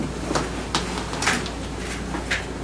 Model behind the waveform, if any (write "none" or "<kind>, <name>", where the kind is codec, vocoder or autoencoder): none